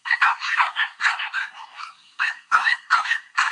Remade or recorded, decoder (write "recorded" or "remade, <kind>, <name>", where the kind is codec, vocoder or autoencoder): remade, codec, SNAC